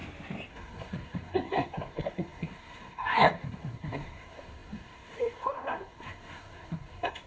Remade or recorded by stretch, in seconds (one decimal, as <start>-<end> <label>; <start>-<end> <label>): 0.0-0.5 recorded; 0.5-7.3 remade